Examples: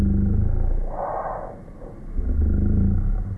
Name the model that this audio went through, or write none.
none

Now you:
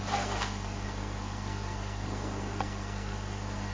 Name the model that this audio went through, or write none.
codec, SNAC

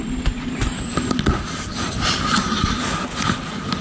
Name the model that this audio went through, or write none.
none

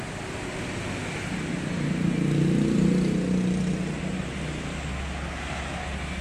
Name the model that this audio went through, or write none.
none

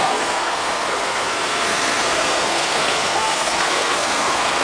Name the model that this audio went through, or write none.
codec, SNAC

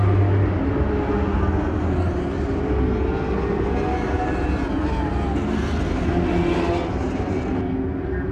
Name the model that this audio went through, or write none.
none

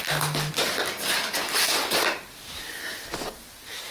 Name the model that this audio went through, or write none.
none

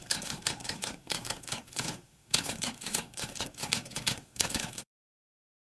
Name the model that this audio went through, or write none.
codec, SNAC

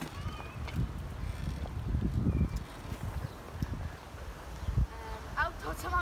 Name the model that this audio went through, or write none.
none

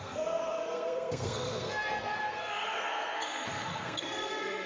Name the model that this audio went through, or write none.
codec, SNAC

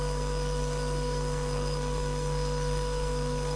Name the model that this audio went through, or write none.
codec, SNAC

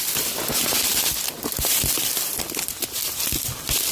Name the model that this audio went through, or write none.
none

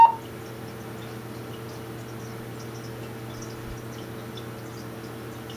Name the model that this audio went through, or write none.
none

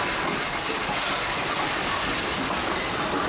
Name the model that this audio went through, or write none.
none